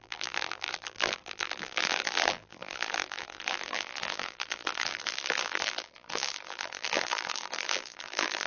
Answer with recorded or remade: remade